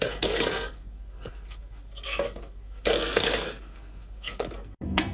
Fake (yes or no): yes